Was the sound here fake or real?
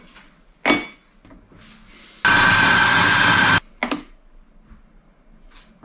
real